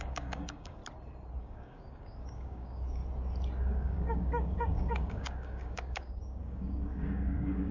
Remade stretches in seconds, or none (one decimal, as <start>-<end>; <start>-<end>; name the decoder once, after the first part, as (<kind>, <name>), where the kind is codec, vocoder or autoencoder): 0.0-0.8 (codec, DAC); 1.4-3.0; 3.6-7.7